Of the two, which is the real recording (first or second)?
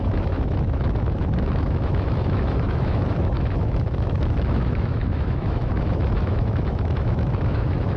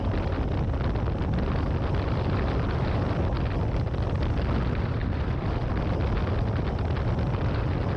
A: second